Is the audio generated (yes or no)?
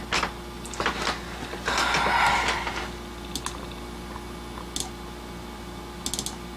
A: no